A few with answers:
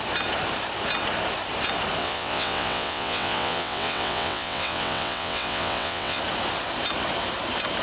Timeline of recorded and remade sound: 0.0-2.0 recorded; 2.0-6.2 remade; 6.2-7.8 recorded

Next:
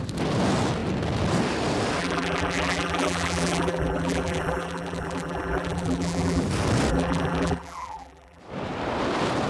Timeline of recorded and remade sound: 0.0-2.0 recorded; 2.0-6.4 remade; 6.4-6.9 recorded; 6.9-8.4 remade; 8.4-9.5 recorded

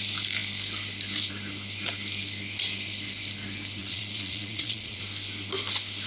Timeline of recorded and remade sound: 0.0-3.8 recorded; 3.8-5.0 remade; 5.0-6.1 recorded

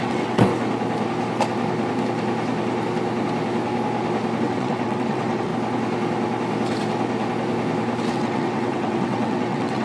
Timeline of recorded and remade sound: 0.0-0.5 remade; 0.5-4.4 recorded; 4.4-5.5 remade; 5.5-8.1 recorded; 8.1-9.8 remade